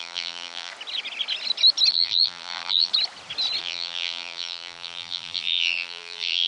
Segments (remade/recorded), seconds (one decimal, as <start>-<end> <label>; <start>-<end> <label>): 0.0-0.7 remade; 0.7-1.9 recorded; 1.9-2.9 remade; 2.9-3.6 recorded; 3.6-6.5 remade